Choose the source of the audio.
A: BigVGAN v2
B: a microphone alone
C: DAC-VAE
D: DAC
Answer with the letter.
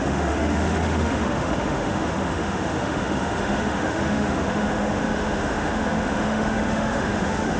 C